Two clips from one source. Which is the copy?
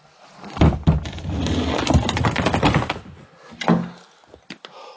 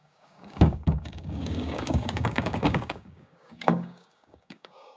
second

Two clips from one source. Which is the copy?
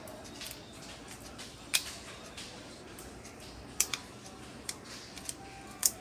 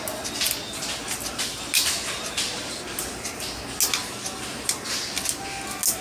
first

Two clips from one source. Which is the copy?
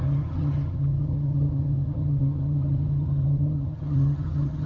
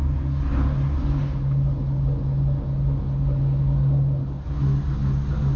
first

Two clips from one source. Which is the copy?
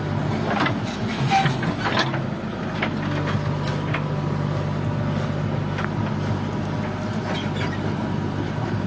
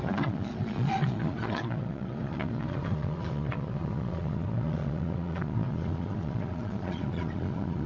second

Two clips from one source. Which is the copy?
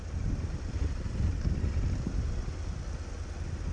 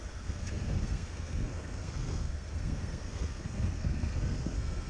second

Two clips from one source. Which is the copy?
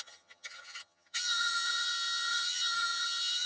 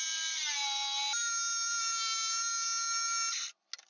first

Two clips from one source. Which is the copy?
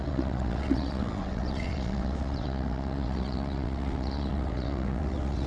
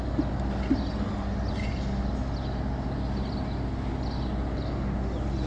first